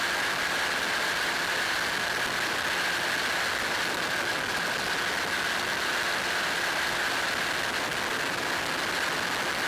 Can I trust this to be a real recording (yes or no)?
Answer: yes